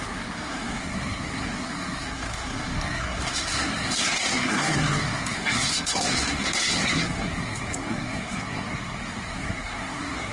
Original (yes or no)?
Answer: no